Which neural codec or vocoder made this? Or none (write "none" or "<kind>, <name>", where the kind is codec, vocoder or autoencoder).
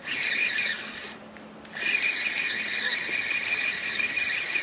vocoder, BigVGAN v2